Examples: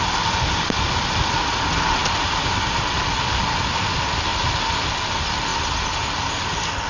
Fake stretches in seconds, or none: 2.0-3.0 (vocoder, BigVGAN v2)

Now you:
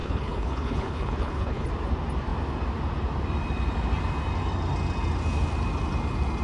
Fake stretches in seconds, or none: 0.0-1.7 (codec, HILCodec)

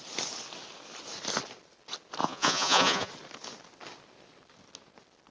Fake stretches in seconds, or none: 2.2-3.1 (vocoder, Vocos)

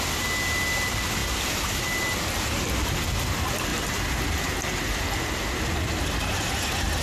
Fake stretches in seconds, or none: none

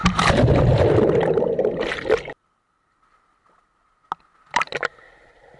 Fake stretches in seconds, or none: 0.0-3.4 (vocoder, BigVGAN v2)

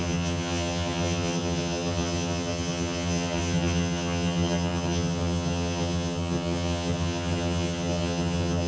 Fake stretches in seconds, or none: 0.0-8.7 (vocoder, HiFi-GAN)